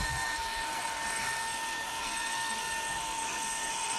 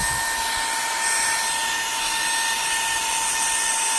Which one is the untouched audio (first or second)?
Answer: second